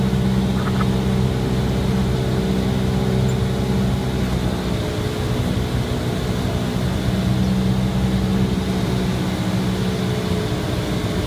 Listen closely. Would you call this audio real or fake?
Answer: real